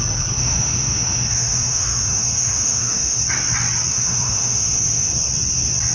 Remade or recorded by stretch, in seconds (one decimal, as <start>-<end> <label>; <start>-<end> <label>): 0.0-0.4 recorded; 0.4-3.2 remade; 3.2-3.9 recorded; 3.9-5.1 remade; 5.1-5.9 recorded